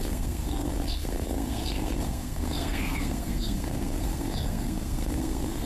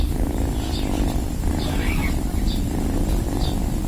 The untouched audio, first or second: second